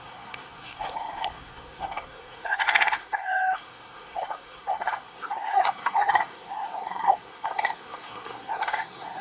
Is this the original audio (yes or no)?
no